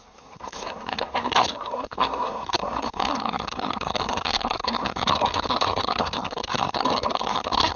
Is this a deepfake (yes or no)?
yes